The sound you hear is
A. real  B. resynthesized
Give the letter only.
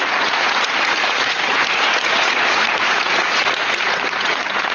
B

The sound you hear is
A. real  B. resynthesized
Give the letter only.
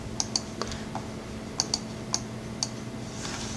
A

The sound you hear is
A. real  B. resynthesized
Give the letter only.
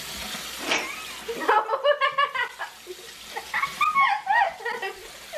A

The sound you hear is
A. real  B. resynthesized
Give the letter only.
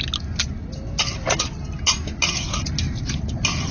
A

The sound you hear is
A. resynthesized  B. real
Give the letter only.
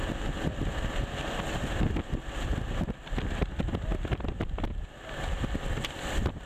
B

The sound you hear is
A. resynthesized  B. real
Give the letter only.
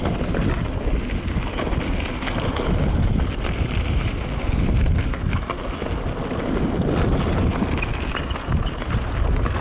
B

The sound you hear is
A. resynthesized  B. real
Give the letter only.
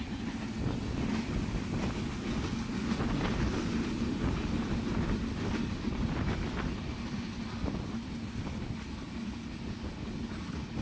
B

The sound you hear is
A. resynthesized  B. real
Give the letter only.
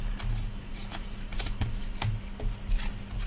B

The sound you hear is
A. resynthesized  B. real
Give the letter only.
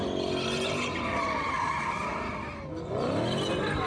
B